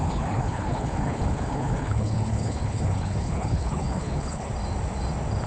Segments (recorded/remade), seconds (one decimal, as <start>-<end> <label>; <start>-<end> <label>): 0.0-4.5 remade; 4.5-5.5 recorded